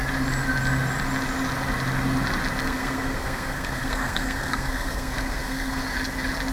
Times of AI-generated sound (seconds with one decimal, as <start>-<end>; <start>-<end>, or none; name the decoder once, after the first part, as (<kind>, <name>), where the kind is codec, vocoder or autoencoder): 2.6-5.8 (codec, SNAC)